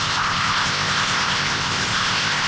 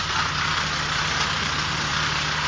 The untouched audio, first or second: second